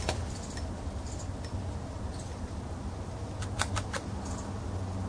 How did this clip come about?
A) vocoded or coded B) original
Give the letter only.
B